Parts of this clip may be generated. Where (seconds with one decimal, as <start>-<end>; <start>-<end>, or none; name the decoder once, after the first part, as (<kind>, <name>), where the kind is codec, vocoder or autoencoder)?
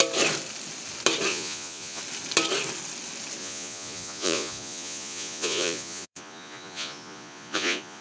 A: 1.3-2.0 (vocoder, Vocos); 3.4-8.0